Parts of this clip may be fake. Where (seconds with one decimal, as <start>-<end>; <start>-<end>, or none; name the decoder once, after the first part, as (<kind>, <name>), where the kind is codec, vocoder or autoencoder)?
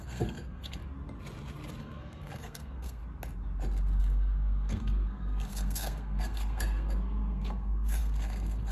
0.0-0.8 (codec, SNAC); 1.8-3.0; 4.0-8.7